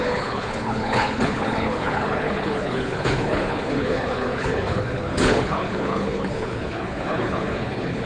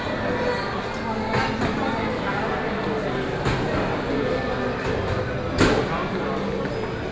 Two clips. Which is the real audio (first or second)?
second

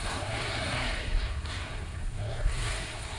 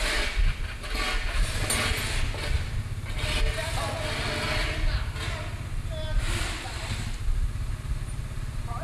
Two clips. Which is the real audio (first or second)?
second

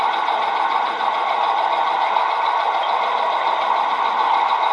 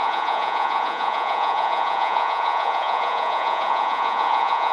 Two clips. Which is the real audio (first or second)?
first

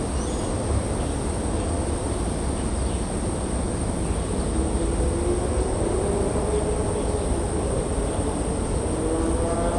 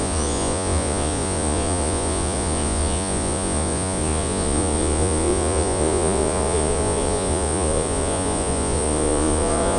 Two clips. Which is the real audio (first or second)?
first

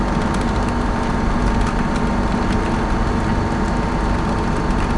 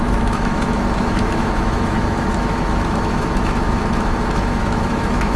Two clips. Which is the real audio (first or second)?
first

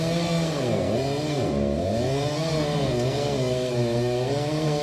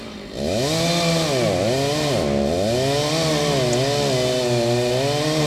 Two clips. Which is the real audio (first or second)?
second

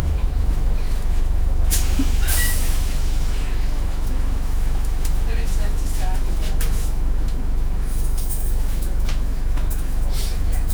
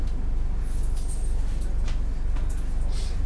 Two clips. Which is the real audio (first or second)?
second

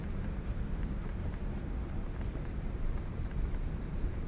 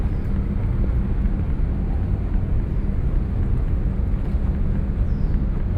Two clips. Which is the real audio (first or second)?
second